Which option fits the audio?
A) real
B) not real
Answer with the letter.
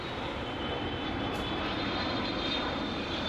B